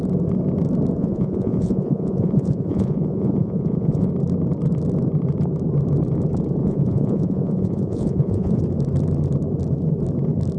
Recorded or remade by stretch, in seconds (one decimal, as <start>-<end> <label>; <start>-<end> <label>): 0.0-1.0 recorded; 1.0-4.1 remade; 4.1-6.6 recorded; 6.6-8.6 remade; 8.6-10.6 recorded